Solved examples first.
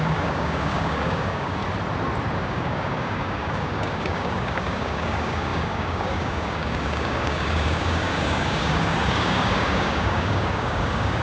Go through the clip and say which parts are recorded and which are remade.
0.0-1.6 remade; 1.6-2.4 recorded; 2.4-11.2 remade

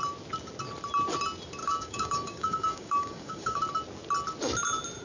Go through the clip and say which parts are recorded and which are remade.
0.0-1.6 recorded; 1.6-3.6 remade; 3.6-5.0 recorded

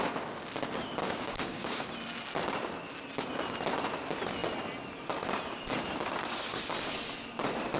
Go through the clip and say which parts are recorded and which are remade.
0.0-1.0 recorded; 1.0-1.9 remade; 1.9-7.8 recorded

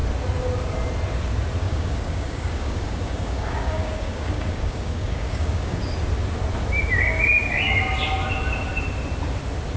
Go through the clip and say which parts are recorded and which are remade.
0.0-1.6 recorded; 1.6-5.8 remade; 5.8-9.8 recorded

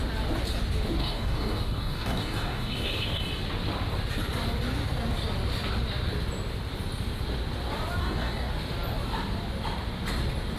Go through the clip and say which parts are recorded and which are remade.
0.0-1.0 recorded; 1.0-3.2 remade; 3.2-8.0 recorded; 8.0-8.5 remade; 8.5-10.6 recorded

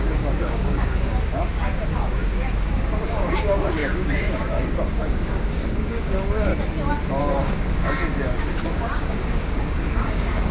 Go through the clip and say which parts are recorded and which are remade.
0.0-6.5 remade; 6.5-7.2 recorded; 7.2-10.5 remade

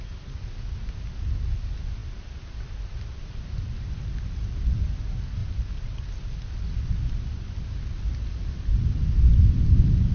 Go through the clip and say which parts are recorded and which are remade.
0.0-10.1 recorded